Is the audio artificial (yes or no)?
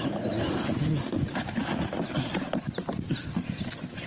no